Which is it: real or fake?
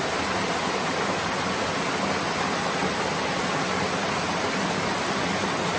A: real